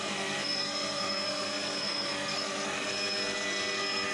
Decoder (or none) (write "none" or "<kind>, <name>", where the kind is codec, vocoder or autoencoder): codec, SNAC